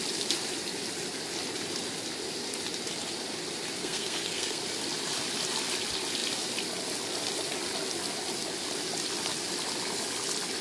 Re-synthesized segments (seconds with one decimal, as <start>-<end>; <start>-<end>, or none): 3.8-4.6